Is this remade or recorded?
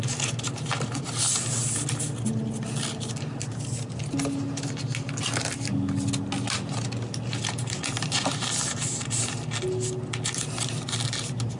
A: recorded